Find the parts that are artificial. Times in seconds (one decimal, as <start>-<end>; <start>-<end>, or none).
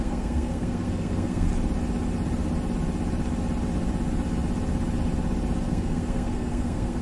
0.0-1.5; 5.7-7.0